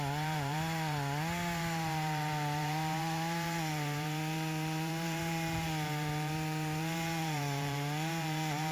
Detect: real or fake fake